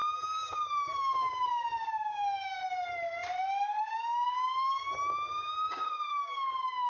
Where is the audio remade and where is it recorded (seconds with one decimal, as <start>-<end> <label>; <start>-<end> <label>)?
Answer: 0.0-2.6 remade; 2.6-3.8 recorded; 3.8-6.9 remade